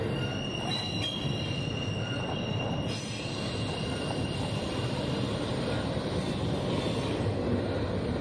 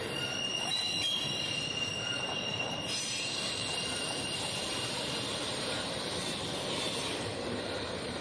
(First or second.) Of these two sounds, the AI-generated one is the second